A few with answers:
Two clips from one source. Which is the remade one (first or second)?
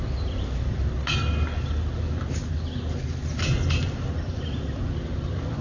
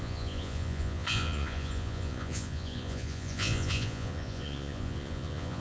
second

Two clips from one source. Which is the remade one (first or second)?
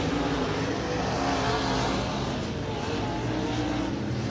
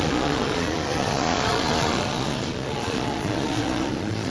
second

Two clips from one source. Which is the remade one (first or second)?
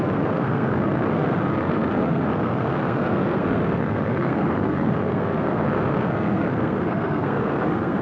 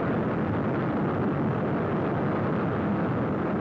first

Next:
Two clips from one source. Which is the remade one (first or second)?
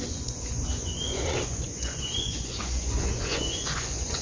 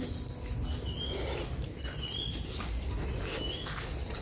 first